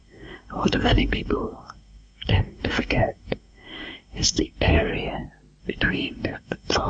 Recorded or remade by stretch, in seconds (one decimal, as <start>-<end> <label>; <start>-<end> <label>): 0.0-4.9 remade; 4.9-5.6 recorded; 5.6-6.9 remade